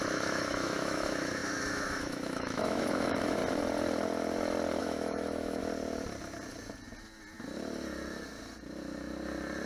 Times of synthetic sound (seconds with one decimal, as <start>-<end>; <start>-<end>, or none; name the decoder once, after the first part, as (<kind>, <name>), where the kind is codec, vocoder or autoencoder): 0.0-3.4 (autoencoder, DAC-VAE); 4.8-5.6